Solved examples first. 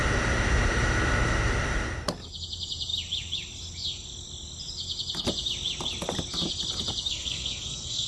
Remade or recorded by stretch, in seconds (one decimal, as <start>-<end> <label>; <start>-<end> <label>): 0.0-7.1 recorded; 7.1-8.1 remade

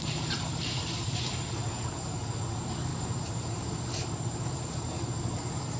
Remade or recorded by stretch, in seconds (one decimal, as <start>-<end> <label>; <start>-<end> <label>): 0.0-5.8 remade

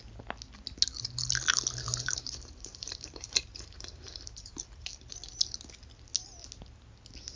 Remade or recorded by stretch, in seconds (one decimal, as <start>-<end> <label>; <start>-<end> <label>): 0.0-1.9 recorded; 1.9-5.1 remade; 5.1-7.4 recorded

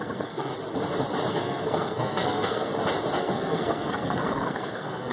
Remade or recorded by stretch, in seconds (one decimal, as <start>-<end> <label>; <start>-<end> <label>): 0.0-0.5 remade; 0.5-1.3 recorded; 1.3-2.7 remade; 2.7-3.2 recorded; 3.2-5.1 remade